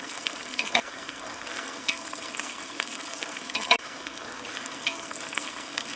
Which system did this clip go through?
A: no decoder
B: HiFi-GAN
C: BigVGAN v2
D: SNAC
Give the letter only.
D